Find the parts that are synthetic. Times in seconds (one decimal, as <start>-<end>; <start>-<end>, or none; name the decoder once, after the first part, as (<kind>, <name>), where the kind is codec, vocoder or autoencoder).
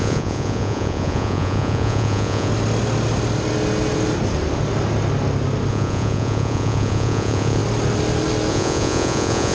0.0-2.5 (vocoder, Vocos); 5.7-7.6; 8.5-9.5